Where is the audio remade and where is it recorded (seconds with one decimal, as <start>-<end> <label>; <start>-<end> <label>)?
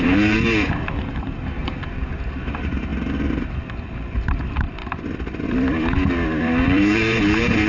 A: 0.0-2.9 remade; 2.9-3.5 recorded; 3.5-4.8 remade; 4.8-6.4 recorded; 6.4-7.7 remade